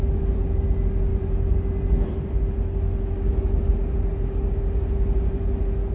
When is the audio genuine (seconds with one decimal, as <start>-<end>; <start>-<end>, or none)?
0.0-5.9